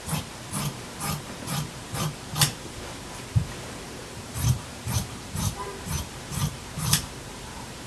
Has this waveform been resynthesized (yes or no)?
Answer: yes